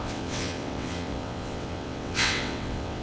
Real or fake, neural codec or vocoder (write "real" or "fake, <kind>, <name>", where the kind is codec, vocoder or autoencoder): fake, vocoder, WaveNeXt